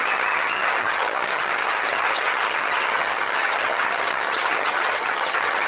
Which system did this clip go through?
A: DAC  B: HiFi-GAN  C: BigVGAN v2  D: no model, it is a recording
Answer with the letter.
B